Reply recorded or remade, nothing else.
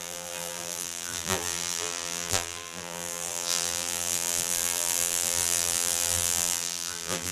remade